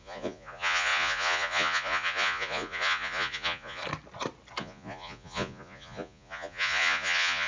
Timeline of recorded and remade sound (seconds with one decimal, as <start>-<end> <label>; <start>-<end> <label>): 0.0-3.8 remade; 3.8-4.6 recorded; 4.6-7.5 remade